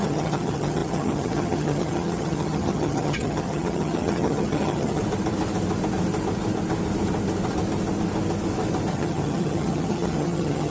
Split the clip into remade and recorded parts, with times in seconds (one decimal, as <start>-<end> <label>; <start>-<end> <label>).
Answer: 0.0-5.0 remade; 5.0-8.9 recorded; 8.9-10.7 remade

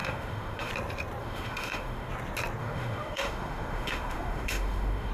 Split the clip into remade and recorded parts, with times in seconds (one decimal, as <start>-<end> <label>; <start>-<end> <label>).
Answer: 0.0-0.7 remade; 0.7-1.2 recorded; 1.2-2.1 remade; 2.1-2.6 recorded; 2.6-5.1 remade

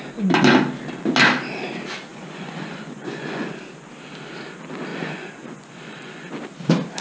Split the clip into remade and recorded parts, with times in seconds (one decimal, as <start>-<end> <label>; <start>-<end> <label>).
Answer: 0.0-2.1 recorded; 2.1-3.5 remade; 3.5-4.9 recorded; 4.9-6.3 remade; 6.3-7.0 recorded

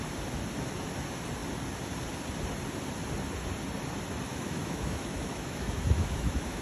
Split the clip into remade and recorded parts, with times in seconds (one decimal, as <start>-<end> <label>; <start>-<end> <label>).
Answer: 0.0-4.3 recorded; 4.3-6.6 remade

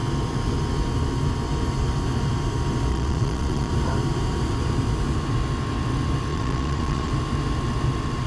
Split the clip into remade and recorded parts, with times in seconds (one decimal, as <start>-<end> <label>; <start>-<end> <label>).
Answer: 0.0-2.9 recorded; 2.9-3.7 remade; 3.7-6.3 recorded; 6.3-7.1 remade; 7.1-8.3 recorded

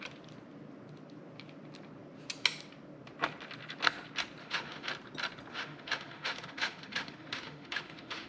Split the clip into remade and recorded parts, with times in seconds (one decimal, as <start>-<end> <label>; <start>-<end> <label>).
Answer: 0.0-4.4 recorded; 4.4-4.9 remade; 4.9-5.5 recorded; 5.5-8.3 remade